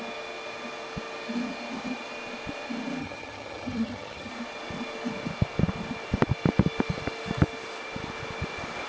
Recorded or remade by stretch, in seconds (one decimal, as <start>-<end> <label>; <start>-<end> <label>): 0.0-3.0 recorded; 3.0-4.3 remade; 4.3-8.9 recorded